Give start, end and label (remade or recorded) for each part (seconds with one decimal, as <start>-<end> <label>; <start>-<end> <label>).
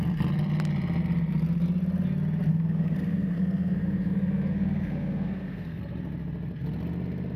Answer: 0.0-2.5 recorded; 2.5-5.8 remade; 5.8-7.4 recorded